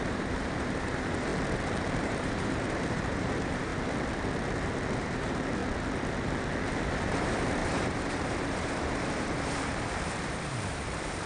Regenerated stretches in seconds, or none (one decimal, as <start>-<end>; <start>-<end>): 0.0-1.3; 2.0-3.7; 5.0-5.6; 7.1-11.3